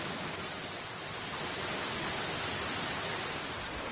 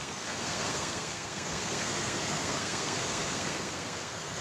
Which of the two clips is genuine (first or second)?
first